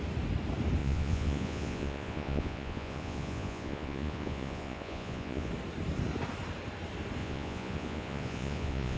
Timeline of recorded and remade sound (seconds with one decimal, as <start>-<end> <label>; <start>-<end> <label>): 0.0-0.8 recorded; 0.8-5.5 remade; 5.5-7.2 recorded; 7.2-9.0 remade